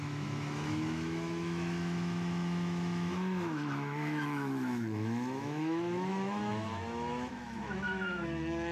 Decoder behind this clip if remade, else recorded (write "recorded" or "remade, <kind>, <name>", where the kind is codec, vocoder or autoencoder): remade, autoencoder, DAC-VAE